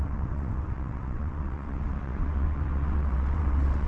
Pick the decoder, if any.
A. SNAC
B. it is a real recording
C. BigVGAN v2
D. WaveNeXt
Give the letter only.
D